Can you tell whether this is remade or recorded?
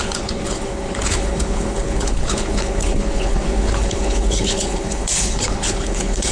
remade